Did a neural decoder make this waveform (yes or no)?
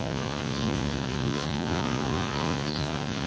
yes